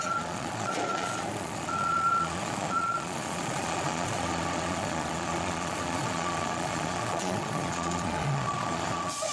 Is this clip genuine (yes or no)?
no